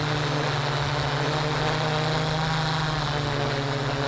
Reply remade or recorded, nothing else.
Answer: recorded